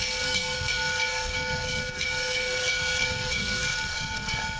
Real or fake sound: fake